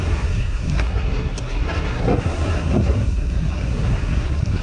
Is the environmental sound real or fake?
fake